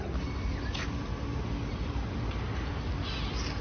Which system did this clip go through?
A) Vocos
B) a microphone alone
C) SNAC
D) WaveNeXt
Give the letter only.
B